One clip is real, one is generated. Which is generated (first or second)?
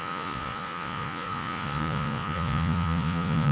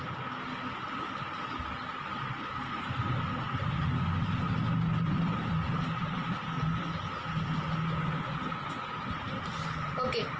first